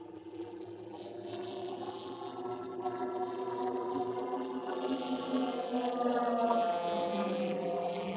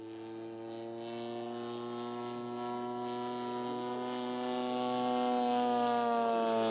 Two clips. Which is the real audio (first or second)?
second